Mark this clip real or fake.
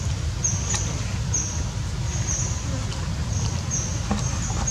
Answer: real